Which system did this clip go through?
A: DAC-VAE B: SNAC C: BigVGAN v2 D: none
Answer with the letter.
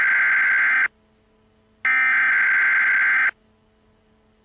D